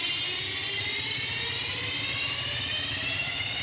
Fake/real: real